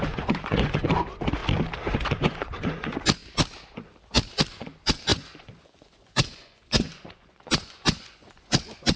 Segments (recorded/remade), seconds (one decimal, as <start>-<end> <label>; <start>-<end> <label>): 0.0-1.4 remade; 1.4-1.9 recorded; 1.9-3.2 remade; 3.2-4.5 recorded; 4.5-9.0 remade